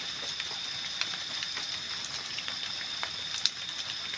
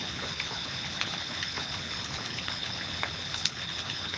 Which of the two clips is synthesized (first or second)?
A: second